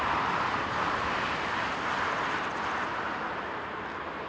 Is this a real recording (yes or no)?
yes